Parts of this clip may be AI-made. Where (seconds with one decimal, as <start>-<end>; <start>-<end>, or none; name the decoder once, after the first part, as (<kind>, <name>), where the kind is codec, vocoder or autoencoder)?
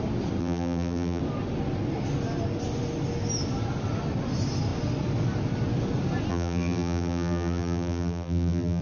0.4-1.2 (vocoder, BigVGAN v2); 6.3-8.8